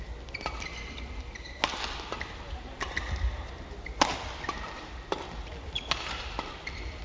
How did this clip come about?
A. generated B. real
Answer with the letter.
B